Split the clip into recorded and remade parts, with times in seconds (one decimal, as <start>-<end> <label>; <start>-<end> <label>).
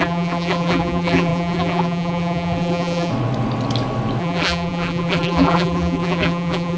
0.0-3.1 remade; 3.1-4.2 recorded; 4.2-6.8 remade